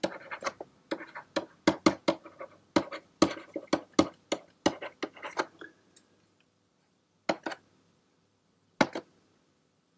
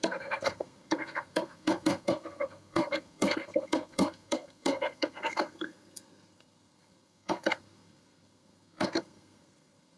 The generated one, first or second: second